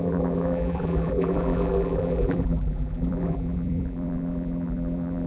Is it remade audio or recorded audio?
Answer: remade